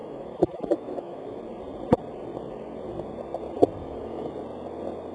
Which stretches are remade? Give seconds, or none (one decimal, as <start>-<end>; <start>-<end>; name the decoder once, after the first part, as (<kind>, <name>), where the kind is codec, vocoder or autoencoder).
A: 0.0-1.4 (autoencoder, DAC-VAE); 3.8-4.3